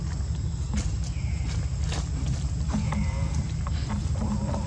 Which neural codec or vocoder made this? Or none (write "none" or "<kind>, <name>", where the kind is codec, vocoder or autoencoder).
none